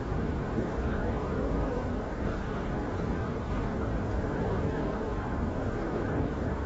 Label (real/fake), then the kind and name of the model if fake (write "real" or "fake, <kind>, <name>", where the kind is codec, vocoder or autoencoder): fake, codec, DAC